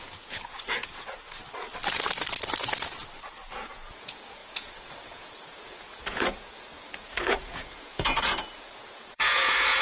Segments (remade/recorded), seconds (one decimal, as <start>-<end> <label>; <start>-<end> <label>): 0.0-1.4 remade; 1.4-3.3 recorded; 3.3-9.8 remade